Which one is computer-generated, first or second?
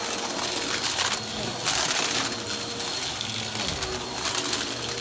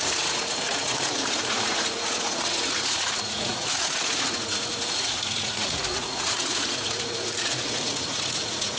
second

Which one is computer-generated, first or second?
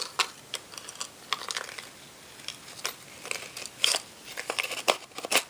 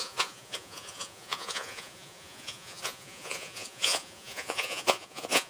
second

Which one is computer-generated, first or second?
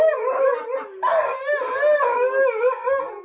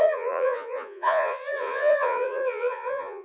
second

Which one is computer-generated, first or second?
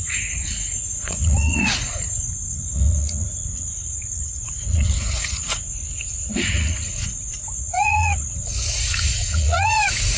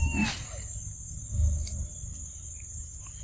first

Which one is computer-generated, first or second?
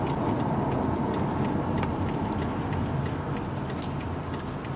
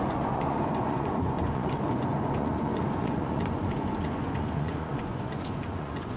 second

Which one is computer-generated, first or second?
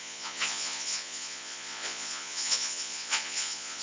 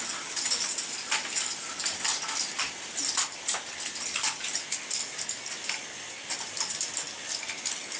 first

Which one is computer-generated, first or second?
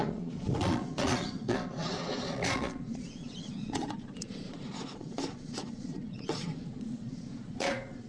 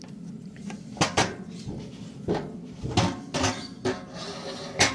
first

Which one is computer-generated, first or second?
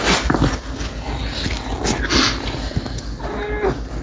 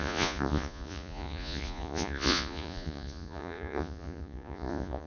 second